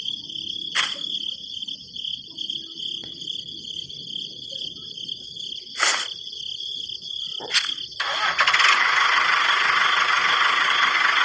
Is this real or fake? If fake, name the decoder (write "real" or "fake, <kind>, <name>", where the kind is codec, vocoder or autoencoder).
real